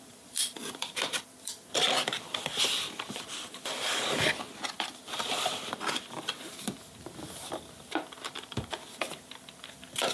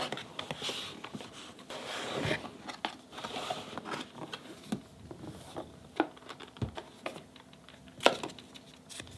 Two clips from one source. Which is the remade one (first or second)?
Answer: first